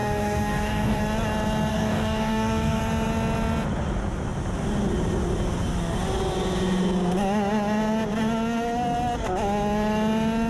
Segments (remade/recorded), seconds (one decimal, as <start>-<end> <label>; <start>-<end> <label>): 0.0-1.0 remade; 1.0-1.7 recorded; 1.7-2.8 remade; 2.8-10.5 recorded